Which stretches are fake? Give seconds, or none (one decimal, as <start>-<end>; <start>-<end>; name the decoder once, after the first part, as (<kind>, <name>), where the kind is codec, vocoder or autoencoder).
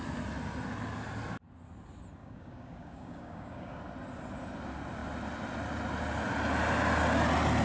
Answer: 2.2-3.8 (codec, DAC)